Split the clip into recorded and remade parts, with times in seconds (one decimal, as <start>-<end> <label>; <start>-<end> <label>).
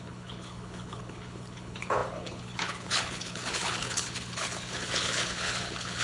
0.0-6.0 remade